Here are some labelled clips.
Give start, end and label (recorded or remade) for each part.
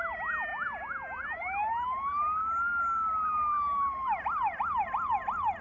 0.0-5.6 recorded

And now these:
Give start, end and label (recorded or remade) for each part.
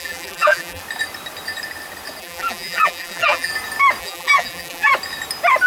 0.0-0.8 remade; 0.8-2.2 recorded; 2.2-3.5 remade; 3.5-4.0 recorded; 4.0-4.9 remade; 4.9-5.7 recorded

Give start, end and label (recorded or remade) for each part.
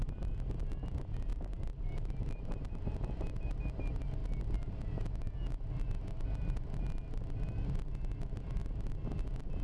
0.0-1.3 recorded; 1.3-2.8 remade; 2.8-9.6 recorded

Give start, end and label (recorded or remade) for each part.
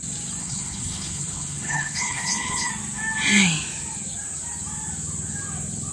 0.0-0.4 recorded; 0.4-2.7 remade; 2.7-5.9 recorded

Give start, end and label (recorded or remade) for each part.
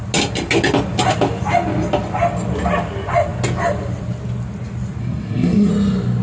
0.0-5.0 recorded; 5.0-5.7 remade; 5.7-6.2 recorded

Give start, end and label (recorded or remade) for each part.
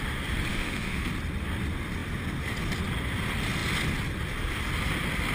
0.0-0.5 recorded; 0.5-1.1 remade; 1.1-5.3 recorded